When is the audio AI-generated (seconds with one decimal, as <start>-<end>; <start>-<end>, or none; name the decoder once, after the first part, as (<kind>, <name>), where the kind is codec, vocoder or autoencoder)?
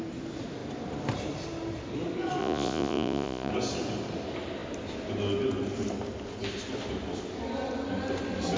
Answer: 2.4-3.5 (vocoder, Vocos)